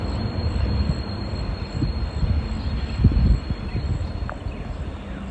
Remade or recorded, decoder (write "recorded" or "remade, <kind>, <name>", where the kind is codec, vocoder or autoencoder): recorded